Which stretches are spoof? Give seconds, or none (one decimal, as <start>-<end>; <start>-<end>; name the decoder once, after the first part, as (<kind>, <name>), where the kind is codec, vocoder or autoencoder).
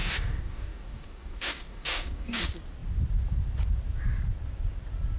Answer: 0.0-2.4 (codec, DAC)